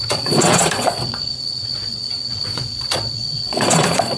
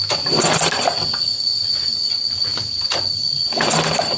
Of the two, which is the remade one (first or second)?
first